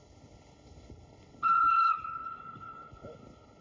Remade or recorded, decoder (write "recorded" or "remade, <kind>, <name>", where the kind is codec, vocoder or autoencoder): remade, codec, HILCodec